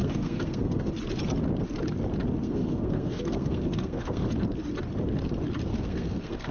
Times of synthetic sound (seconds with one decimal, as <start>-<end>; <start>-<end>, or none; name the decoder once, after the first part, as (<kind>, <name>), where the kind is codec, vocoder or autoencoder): 0.0-0.9 (codec, SNAC); 2.4-4.3; 5.7-6.5